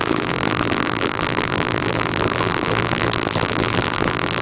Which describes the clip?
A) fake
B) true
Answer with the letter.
A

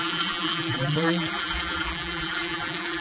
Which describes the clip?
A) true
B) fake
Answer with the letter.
B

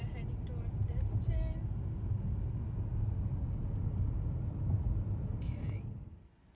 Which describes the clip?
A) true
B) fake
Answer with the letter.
A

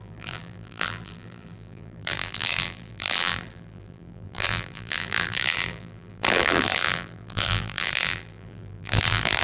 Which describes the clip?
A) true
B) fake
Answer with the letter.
B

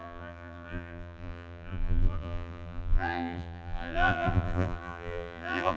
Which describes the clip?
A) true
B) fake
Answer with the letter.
B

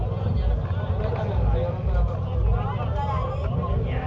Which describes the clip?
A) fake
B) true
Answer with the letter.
B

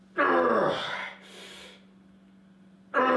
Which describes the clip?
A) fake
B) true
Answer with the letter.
B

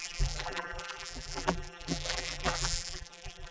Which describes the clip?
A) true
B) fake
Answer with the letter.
B